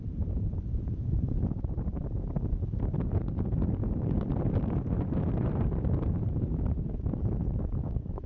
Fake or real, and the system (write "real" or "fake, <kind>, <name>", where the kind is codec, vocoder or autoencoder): fake, vocoder, BigVGAN v2